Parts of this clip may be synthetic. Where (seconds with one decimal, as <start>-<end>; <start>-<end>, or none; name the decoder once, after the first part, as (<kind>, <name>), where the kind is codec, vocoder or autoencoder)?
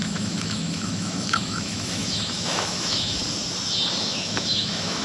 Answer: 0.0-3.2 (autoencoder, DAC-VAE); 4.0-5.0